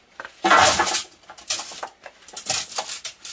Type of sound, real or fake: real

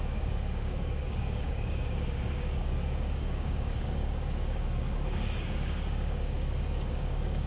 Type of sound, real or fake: fake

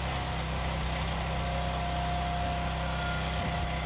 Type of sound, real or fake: real